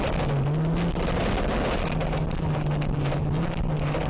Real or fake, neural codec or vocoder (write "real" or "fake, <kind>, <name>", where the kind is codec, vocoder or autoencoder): real